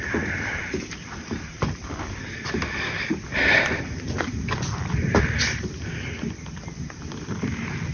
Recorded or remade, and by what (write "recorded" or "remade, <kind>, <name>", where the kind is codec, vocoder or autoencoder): remade, vocoder, BigVGAN v2